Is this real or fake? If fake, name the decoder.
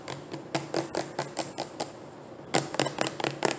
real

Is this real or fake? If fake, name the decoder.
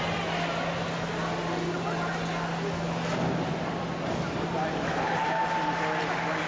real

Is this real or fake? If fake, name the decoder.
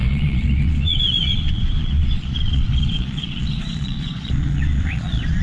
fake, vocoder, Vocos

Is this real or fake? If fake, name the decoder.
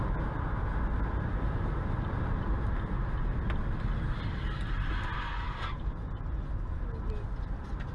real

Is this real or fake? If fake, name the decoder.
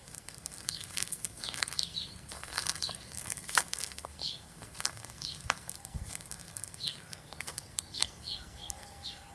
fake, codec, SNAC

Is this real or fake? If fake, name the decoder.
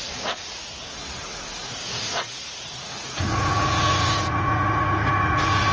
fake, vocoder, Vocos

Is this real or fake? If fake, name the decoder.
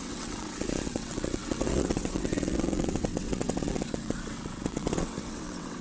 fake, vocoder, WaveNeXt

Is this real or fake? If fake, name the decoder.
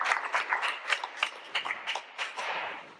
real